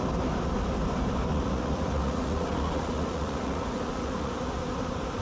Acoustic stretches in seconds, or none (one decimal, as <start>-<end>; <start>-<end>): 0.0-1.3; 4.4-5.2